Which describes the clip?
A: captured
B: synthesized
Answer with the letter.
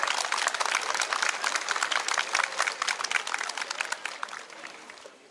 A